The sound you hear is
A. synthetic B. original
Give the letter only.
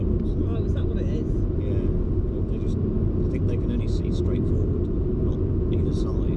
B